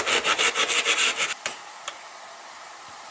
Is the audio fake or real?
real